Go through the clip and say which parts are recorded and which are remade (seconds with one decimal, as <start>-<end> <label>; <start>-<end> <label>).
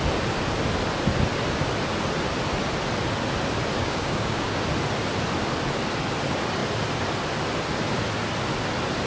0.0-3.8 recorded; 3.8-4.6 remade; 4.6-9.1 recorded